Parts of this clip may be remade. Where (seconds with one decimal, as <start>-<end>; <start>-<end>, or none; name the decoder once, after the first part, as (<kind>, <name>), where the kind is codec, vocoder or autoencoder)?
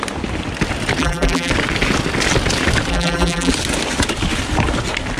1.0-1.5 (vocoder, BigVGAN v2); 2.9-3.5